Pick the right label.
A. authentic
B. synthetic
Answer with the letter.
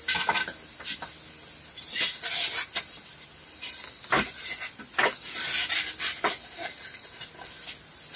A